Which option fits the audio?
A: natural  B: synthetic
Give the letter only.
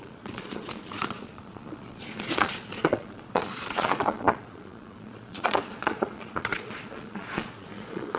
B